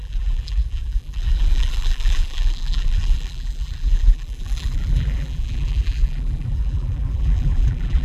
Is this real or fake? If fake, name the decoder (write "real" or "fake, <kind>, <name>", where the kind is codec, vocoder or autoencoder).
fake, vocoder, BigVGAN v2